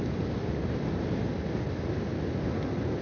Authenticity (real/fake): real